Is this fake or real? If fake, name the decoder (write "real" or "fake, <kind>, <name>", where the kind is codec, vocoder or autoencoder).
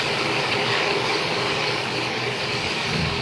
fake, codec, DAC